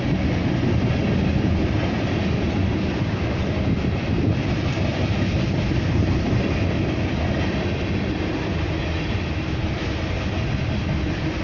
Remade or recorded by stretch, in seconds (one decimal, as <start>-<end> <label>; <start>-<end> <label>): 0.0-11.4 recorded